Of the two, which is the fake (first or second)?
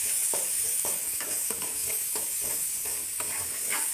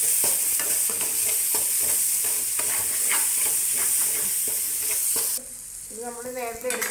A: first